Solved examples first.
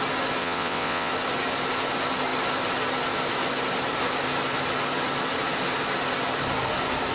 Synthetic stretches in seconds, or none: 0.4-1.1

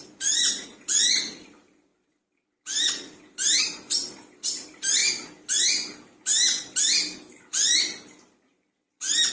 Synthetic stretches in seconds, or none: 0.0-1.9; 3.6-5.0